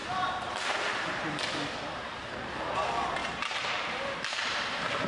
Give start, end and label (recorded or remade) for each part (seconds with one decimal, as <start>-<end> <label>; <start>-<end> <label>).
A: 0.0-1.4 remade; 1.4-3.2 recorded; 3.2-5.1 remade